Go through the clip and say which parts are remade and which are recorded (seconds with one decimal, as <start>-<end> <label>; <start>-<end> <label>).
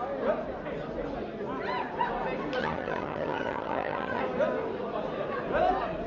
0.0-2.6 recorded; 2.6-4.2 remade; 4.2-6.1 recorded